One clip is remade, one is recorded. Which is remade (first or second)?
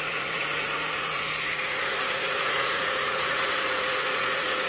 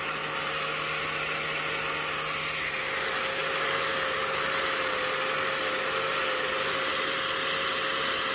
first